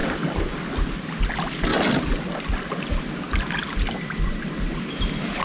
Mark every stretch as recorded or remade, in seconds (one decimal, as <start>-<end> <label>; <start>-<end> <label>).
0.0-5.4 recorded